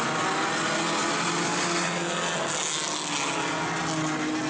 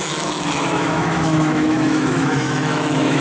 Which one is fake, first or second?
second